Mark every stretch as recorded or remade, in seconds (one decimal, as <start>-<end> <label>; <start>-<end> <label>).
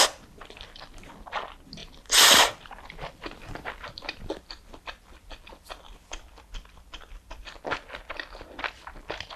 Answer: 0.0-1.8 recorded; 1.8-4.8 remade; 4.8-9.4 recorded